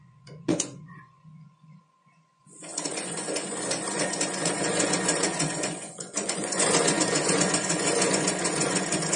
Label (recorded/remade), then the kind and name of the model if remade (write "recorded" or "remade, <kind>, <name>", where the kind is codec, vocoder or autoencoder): remade, vocoder, Vocos